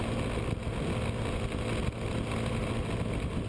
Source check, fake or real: real